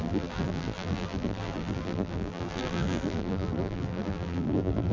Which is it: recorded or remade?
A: remade